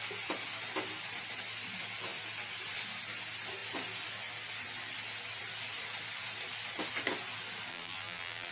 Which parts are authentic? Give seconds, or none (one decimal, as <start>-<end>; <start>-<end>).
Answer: 0.0-7.7